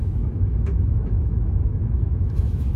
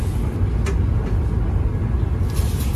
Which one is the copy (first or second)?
first